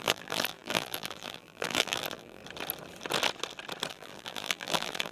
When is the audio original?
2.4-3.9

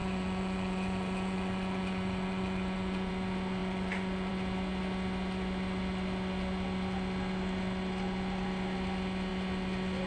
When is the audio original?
3.1-3.6; 4.3-10.1

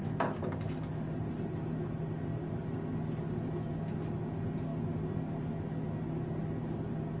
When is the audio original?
0.0-7.2

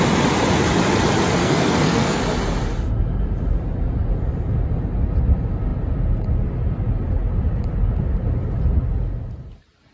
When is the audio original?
0.0-1.4; 2.2-9.9

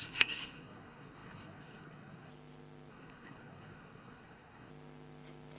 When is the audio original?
2.3-2.9; 4.7-5.6

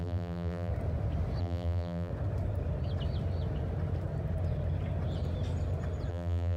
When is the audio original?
0.7-1.4; 2.1-6.1